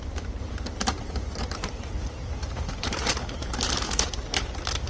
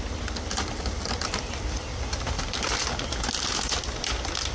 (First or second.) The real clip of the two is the second